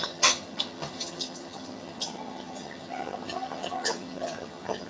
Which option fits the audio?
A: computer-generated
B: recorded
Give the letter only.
A